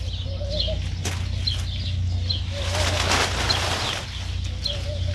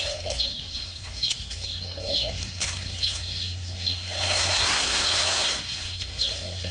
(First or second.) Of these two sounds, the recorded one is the first